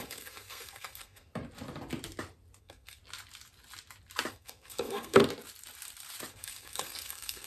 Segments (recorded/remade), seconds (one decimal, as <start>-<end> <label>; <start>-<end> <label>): 0.0-1.3 remade; 1.3-2.6 recorded; 2.6-3.0 remade; 3.0-4.3 recorded; 4.3-5.2 remade; 5.2-6.3 recorded; 6.3-7.5 remade